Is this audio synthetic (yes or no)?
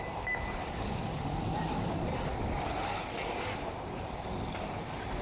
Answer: no